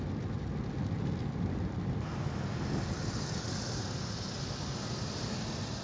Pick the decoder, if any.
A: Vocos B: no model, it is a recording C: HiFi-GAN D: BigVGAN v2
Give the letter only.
B